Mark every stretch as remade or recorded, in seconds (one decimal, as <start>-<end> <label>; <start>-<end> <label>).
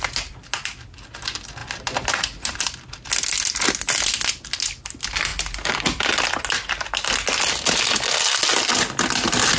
0.0-9.6 recorded